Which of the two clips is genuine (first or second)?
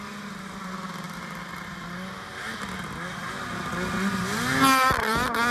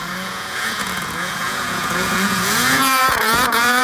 first